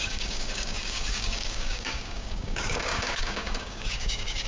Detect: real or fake fake